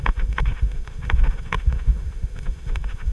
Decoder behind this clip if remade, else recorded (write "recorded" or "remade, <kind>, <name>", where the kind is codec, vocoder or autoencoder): remade, autoencoder, DAC-VAE